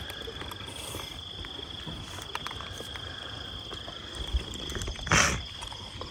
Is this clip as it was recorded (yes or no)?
yes